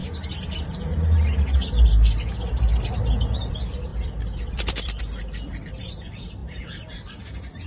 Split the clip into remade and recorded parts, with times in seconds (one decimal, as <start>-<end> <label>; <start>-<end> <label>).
0.0-3.5 recorded; 3.5-7.7 remade